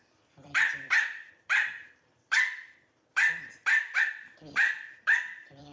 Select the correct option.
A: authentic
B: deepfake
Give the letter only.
B